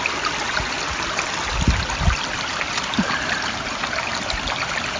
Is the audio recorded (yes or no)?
yes